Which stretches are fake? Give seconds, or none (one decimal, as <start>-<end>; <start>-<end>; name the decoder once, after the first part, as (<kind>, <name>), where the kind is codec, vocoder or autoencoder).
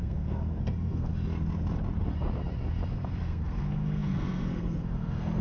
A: 0.0-1.1 (codec, SNAC); 3.2-5.4